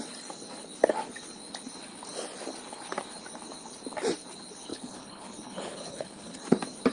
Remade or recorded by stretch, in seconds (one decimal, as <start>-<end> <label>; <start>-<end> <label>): 0.0-4.7 recorded; 4.7-6.4 remade; 6.4-6.9 recorded